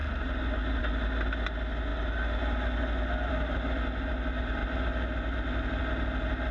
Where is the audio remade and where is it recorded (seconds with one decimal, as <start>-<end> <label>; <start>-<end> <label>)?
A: 0.0-6.5 recorded